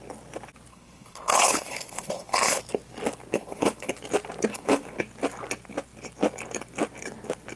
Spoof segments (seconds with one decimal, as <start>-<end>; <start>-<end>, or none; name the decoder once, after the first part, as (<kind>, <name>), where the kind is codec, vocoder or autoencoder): 0.7-2.6 (codec, HILCodec); 3.3-3.9; 4.5-5.0